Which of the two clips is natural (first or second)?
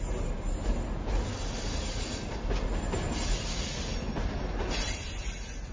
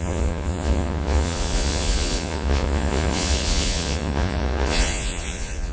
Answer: first